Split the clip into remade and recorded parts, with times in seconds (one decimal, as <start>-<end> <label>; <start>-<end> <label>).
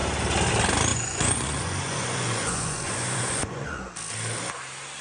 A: 0.0-0.9 recorded; 0.9-3.9 remade; 3.9-5.0 recorded